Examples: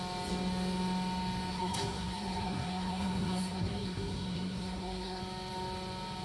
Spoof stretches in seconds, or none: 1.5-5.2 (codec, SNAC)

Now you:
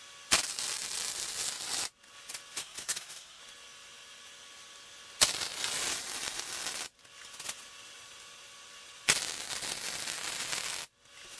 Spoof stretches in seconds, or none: 2.6-3.4 (codec, SNAC)

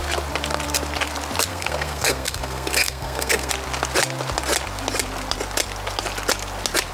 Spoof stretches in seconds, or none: 1.5-3.5 (codec, SNAC)